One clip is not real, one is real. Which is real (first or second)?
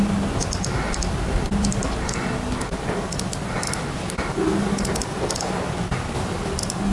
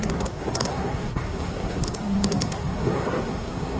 first